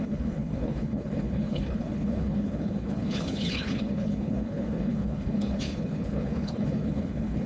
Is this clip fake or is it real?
fake